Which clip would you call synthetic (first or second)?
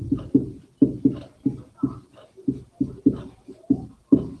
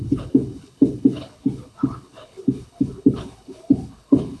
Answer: second